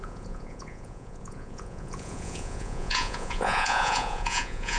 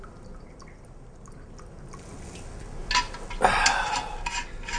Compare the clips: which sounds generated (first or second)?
first